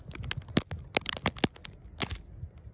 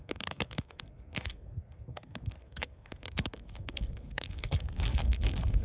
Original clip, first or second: first